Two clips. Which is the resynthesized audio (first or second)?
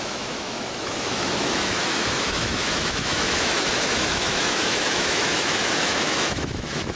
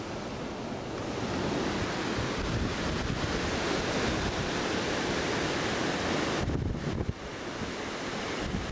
first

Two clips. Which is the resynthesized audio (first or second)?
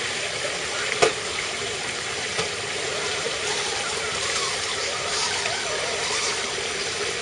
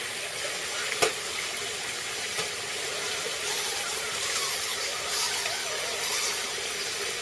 first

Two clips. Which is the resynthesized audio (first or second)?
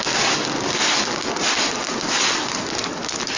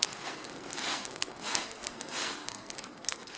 second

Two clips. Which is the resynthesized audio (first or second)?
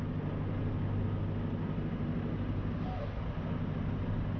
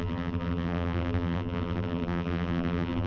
second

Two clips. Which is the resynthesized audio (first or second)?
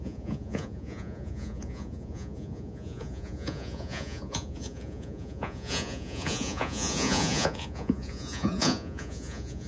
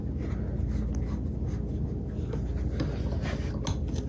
first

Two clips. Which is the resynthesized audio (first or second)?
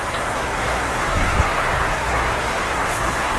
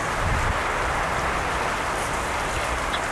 first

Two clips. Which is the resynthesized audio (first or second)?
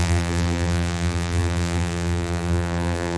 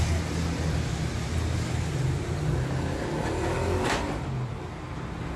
first